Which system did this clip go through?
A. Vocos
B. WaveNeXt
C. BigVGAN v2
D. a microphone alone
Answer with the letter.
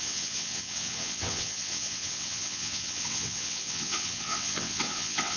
B